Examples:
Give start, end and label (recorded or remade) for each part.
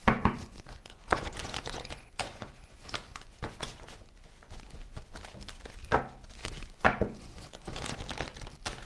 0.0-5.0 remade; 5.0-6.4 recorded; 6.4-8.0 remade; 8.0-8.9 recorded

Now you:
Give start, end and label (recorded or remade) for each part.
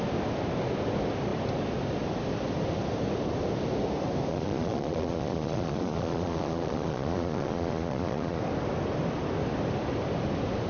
0.0-4.3 recorded; 4.3-8.4 remade; 8.4-10.7 recorded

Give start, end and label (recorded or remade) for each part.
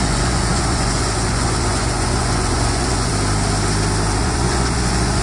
0.0-3.1 remade; 3.1-4.2 recorded; 4.2-5.2 remade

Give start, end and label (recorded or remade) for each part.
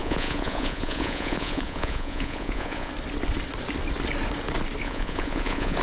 0.0-2.9 remade; 2.9-4.8 recorded; 4.8-5.8 remade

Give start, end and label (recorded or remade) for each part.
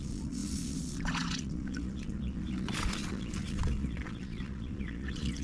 0.0-5.4 remade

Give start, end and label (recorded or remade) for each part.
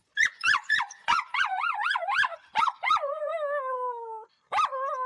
0.0-3.3 remade; 3.3-5.1 recorded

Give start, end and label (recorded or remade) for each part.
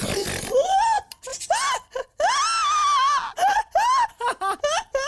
0.0-5.1 recorded